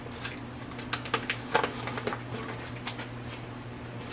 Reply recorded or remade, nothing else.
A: recorded